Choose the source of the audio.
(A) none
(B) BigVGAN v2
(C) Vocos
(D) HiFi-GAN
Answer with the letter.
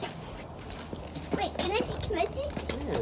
A